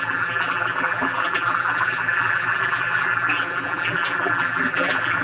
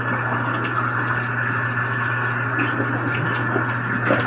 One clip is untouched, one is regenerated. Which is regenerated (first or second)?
first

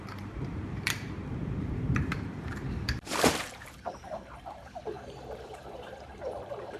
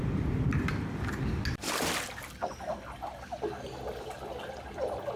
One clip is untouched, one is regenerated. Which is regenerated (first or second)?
first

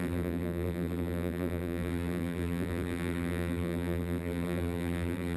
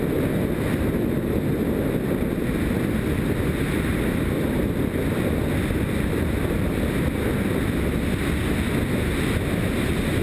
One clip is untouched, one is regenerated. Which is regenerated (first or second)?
first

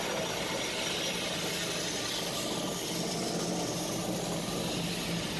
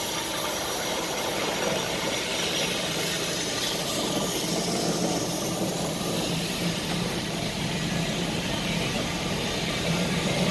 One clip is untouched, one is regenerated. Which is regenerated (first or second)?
second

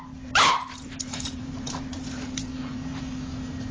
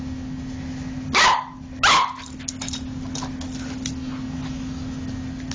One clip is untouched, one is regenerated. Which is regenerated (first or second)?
first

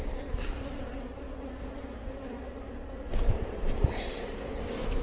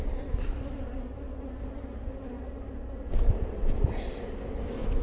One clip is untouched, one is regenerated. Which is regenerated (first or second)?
first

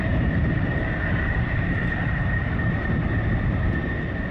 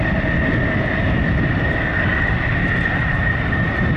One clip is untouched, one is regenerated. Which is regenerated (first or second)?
first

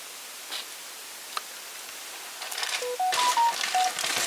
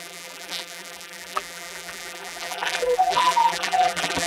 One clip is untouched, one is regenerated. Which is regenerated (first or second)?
second